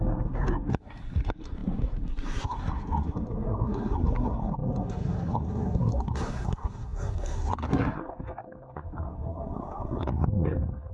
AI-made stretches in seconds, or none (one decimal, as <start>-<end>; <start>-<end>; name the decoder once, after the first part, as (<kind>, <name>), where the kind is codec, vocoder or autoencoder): 0.0-10.9 (codec, SNAC)